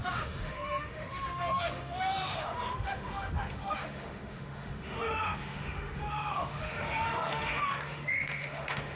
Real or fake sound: fake